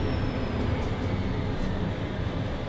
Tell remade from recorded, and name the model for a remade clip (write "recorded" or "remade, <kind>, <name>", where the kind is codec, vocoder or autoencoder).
recorded